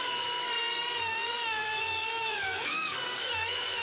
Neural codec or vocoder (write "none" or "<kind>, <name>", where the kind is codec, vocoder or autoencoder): codec, SNAC